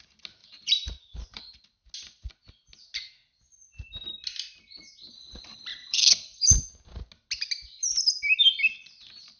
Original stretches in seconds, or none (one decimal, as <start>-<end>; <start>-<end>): 0.0-0.4; 1.4-5.7; 6.7-9.4